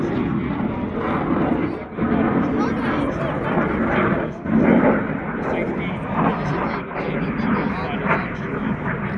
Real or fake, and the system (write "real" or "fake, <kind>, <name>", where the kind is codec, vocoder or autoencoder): real